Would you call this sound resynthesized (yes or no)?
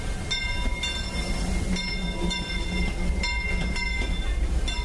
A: no